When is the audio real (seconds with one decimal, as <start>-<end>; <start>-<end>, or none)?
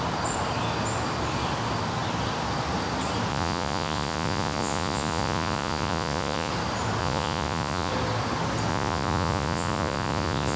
0.0-3.3; 6.5-7.0; 7.9-8.7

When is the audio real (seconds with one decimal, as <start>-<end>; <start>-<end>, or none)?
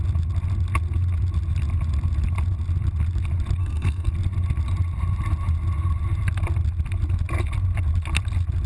0.0-3.6; 4.1-8.7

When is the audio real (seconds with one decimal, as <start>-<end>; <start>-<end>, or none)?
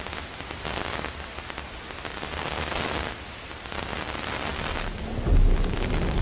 0.0-6.2